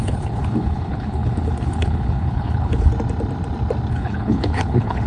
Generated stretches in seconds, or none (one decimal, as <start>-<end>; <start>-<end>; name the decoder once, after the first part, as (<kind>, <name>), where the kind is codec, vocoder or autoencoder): 0.0-2.9 (codec, HILCodec); 3.9-5.1